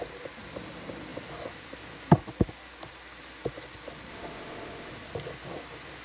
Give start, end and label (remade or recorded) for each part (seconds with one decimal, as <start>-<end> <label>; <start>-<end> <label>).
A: 0.0-4.1 recorded; 4.1-4.9 remade; 4.9-6.0 recorded